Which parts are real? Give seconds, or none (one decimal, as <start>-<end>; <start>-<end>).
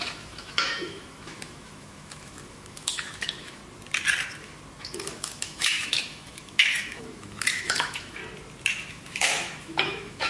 3.6-4.8; 8.2-8.9